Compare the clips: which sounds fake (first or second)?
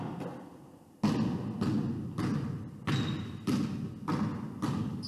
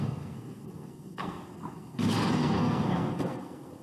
second